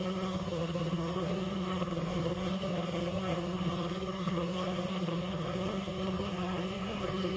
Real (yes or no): no